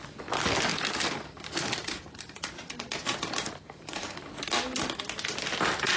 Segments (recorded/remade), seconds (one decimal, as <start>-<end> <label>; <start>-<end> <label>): 0.0-0.7 recorded; 0.7-4.3 remade; 4.3-6.0 recorded